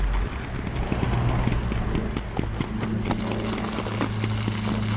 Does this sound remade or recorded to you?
recorded